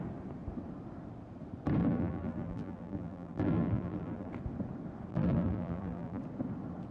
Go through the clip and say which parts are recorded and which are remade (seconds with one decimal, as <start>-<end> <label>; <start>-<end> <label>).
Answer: 0.0-1.8 recorded; 1.8-4.3 remade; 4.3-5.1 recorded; 5.1-6.2 remade; 6.2-6.9 recorded